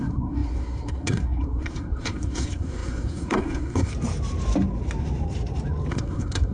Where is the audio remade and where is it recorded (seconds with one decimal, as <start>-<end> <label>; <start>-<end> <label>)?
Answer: 0.0-3.9 remade; 3.9-5.9 recorded; 5.9-6.5 remade